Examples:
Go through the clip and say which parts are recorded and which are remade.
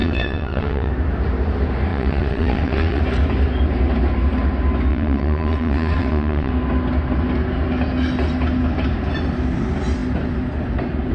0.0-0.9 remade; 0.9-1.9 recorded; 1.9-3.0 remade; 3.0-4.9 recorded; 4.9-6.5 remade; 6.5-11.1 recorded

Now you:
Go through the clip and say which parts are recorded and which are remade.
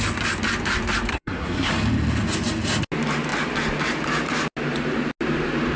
0.0-1.1 recorded; 1.1-1.7 remade; 1.7-5.8 recorded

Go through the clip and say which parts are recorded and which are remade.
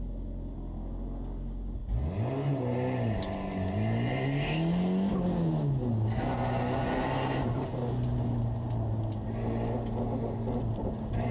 0.0-11.3 recorded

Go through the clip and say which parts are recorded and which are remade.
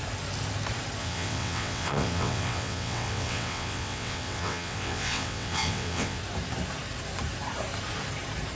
0.0-1.0 recorded; 1.0-6.2 remade; 6.2-8.6 recorded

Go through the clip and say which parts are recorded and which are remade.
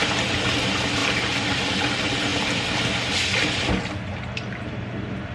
0.0-5.3 recorded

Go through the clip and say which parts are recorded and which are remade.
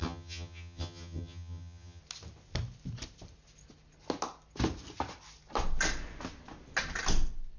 0.0-2.0 remade; 2.0-7.6 recorded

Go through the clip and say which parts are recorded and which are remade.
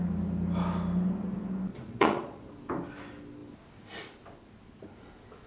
0.0-1.7 recorded; 1.7-2.5 remade; 2.5-5.5 recorded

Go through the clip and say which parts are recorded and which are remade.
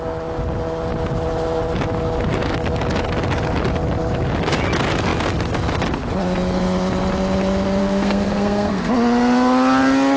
0.0-7.8 recorded; 7.8-8.9 remade; 8.9-10.2 recorded